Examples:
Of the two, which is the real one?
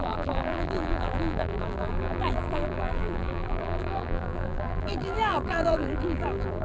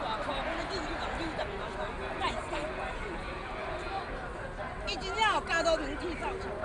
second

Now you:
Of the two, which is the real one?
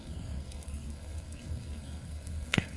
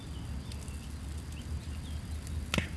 second